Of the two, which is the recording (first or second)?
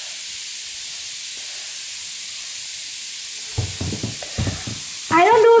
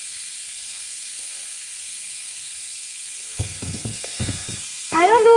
first